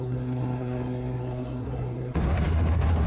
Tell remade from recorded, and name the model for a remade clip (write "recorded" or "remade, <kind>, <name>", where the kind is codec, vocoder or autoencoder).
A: remade, codec, SNAC